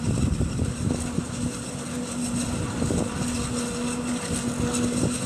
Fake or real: real